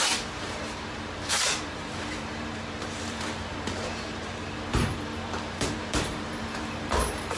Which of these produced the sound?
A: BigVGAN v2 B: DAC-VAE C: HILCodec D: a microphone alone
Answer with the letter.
A